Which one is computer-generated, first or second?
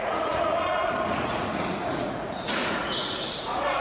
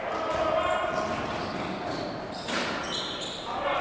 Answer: first